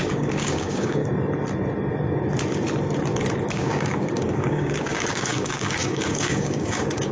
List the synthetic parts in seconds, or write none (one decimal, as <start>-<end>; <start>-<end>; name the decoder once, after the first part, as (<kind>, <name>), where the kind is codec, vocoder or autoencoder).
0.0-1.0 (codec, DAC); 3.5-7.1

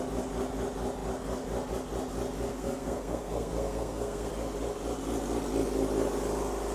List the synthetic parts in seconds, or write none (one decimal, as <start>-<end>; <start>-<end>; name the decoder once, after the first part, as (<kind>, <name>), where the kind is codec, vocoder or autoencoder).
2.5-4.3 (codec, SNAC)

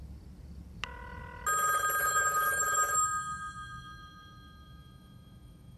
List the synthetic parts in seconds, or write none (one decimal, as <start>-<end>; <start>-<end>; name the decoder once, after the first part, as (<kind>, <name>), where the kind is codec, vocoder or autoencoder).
2.0-5.8 (autoencoder, DAC-VAE)

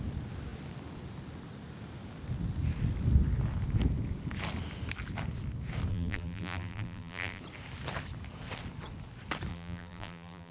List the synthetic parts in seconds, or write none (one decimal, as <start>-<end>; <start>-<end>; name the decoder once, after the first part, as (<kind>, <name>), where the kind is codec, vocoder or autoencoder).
5.9-7.4 (vocoder, BigVGAN v2); 9.5-10.5

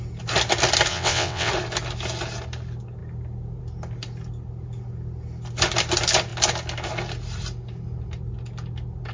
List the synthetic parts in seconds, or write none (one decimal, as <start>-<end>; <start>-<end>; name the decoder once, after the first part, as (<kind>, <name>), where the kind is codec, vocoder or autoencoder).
0.9-1.5 (vocoder, WaveNeXt)